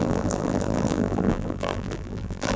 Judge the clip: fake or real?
fake